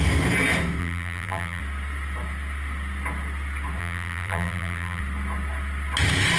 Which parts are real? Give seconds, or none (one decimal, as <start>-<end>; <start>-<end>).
0.0-0.8; 1.6-3.8; 5.0-6.4